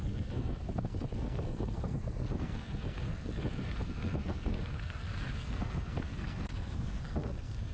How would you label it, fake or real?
fake